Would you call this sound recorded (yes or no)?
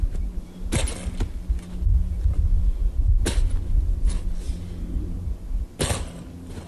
yes